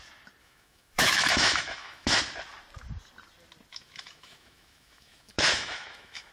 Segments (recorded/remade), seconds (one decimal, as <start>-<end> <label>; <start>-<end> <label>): 0.0-0.4 recorded; 0.4-2.2 remade; 2.2-3.7 recorded; 3.7-6.3 remade